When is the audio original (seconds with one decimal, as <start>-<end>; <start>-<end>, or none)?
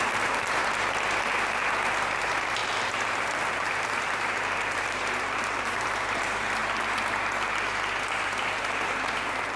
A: 0.6-2.2; 2.6-3.5; 6.6-8.6